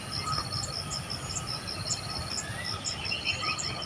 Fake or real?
real